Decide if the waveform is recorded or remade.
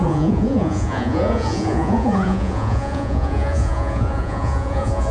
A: remade